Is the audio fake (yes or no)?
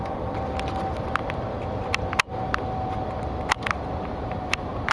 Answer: no